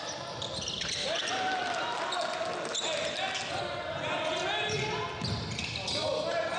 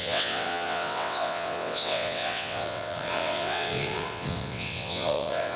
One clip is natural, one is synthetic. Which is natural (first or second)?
first